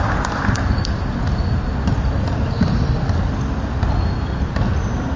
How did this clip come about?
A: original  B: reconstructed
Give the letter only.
A